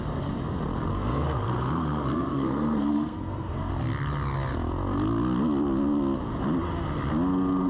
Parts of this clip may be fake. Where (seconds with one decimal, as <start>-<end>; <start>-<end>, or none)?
0.9-3.7